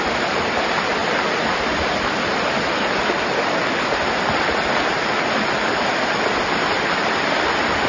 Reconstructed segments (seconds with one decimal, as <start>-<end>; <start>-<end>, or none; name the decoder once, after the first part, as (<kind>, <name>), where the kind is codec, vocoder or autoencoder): none